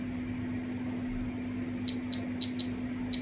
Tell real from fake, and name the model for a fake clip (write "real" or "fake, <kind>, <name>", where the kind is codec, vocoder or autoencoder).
real